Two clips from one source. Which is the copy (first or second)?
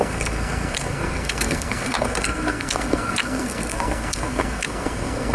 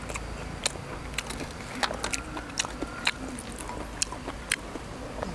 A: first